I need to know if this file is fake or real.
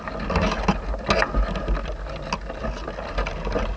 real